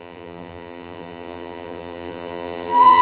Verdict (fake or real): fake